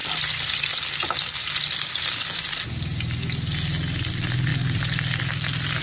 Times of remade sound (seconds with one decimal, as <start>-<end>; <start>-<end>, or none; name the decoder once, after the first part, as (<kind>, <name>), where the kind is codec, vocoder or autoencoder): 0.0-0.7 (vocoder, BigVGAN v2); 4.5-5.2